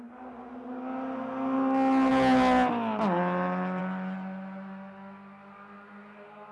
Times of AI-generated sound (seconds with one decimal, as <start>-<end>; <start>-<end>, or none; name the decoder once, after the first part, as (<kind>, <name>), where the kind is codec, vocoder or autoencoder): none